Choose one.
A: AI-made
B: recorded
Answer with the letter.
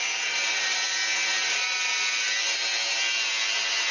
B